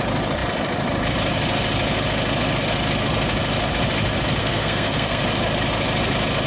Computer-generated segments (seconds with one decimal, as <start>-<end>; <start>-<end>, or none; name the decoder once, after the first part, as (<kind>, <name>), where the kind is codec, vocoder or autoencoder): 4.4-5.2 (codec, SNAC)